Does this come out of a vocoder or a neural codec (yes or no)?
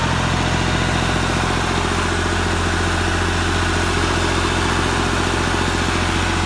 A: no